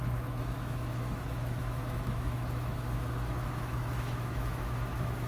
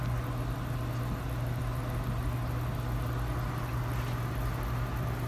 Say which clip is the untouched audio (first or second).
second